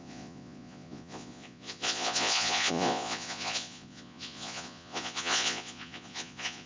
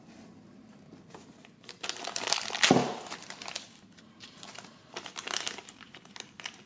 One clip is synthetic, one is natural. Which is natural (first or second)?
second